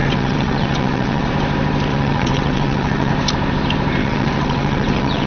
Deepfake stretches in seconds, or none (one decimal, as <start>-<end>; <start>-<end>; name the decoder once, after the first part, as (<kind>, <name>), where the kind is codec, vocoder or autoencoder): 0.0-1.3 (vocoder, WaveNeXt); 1.9-3.1; 4.0-5.3